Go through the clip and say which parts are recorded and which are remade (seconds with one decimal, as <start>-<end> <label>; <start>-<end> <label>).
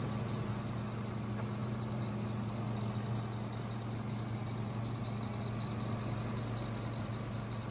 0.0-1.6 recorded; 1.6-2.1 remade; 2.1-7.7 recorded